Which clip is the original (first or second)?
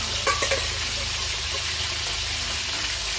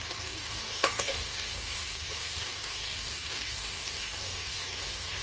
first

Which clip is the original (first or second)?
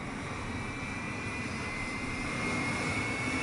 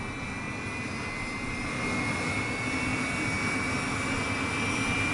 second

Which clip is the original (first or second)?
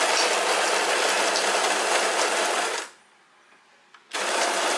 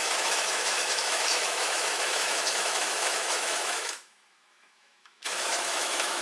first